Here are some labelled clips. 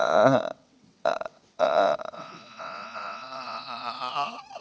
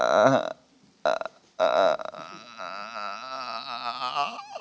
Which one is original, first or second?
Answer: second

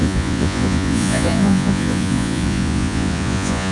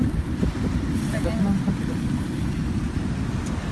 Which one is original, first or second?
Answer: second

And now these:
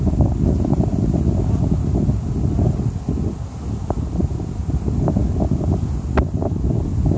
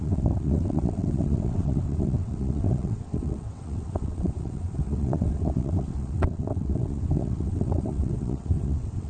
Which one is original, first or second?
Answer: first